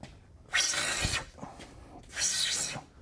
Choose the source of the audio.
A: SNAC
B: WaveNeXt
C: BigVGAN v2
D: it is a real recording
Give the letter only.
D